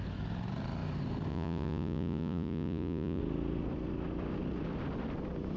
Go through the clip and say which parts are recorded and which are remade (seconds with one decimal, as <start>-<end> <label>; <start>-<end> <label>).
0.0-1.3 recorded; 1.3-3.2 remade; 3.2-5.6 recorded

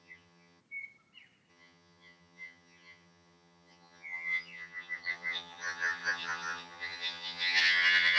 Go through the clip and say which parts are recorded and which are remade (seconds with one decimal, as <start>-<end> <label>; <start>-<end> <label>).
0.0-0.6 remade; 0.6-1.5 recorded; 1.5-8.2 remade

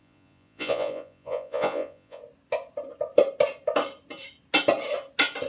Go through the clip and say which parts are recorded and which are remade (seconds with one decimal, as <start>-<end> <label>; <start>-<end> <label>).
0.0-2.2 remade; 2.2-5.5 recorded